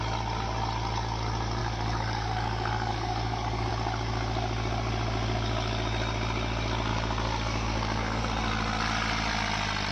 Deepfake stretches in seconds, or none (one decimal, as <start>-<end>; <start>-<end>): 1.6-3.7; 6.9-8.2